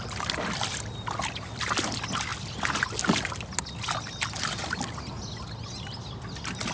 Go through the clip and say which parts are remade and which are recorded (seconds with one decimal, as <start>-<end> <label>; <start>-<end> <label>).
0.0-6.7 recorded